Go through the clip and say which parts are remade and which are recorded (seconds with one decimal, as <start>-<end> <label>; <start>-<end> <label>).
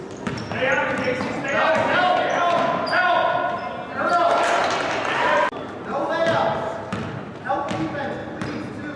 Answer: 0.0-9.0 recorded